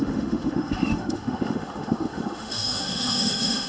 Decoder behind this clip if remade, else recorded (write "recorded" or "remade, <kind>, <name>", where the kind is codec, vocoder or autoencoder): remade, autoencoder, DAC-VAE